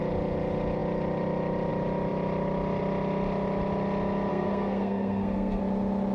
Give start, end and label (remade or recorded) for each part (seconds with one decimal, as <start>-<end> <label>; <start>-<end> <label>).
0.0-4.3 recorded; 4.3-5.6 remade; 5.6-6.1 recorded